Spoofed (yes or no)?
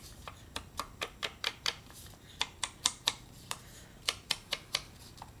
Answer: yes